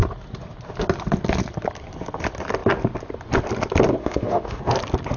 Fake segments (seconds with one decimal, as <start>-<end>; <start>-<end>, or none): 4.0-4.6